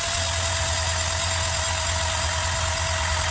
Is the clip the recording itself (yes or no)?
yes